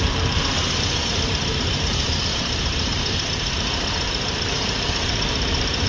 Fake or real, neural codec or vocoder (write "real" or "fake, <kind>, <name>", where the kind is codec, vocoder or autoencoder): fake, vocoder, BigVGAN v2